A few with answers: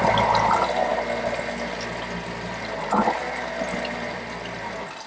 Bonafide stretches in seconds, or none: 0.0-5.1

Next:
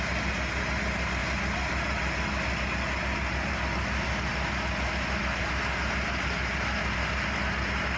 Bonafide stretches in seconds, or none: 0.0-8.0